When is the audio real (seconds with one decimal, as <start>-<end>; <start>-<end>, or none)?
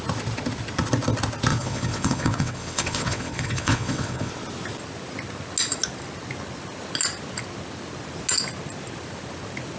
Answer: 0.0-1.5; 4.3-9.8